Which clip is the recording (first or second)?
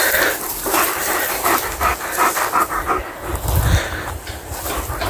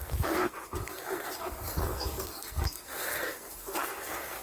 first